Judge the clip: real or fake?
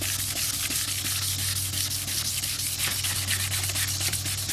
real